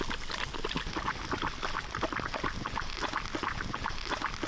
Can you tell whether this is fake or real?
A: real